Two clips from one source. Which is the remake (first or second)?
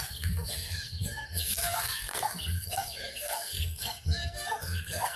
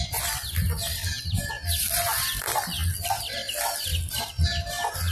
first